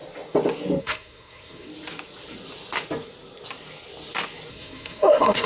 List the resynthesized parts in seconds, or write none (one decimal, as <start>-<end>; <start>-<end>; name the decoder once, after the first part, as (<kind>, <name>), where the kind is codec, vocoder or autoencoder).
0.8-1.7 (codec, SNAC); 4.5-5.5